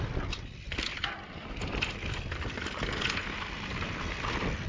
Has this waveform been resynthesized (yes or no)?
no